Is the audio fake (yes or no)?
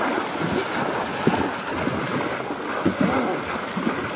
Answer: no